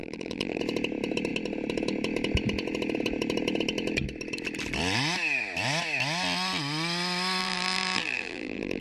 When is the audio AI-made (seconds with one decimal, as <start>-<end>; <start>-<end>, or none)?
0.0-0.6; 7.4-8.8